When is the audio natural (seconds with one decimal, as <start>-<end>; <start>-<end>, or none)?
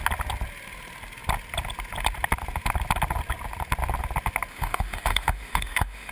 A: 0.0-4.5